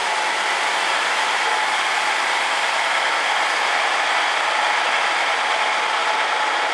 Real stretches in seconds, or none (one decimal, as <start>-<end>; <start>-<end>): 0.0-6.0